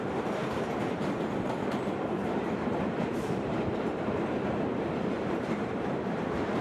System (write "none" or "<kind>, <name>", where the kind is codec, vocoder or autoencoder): vocoder, BigVGAN v2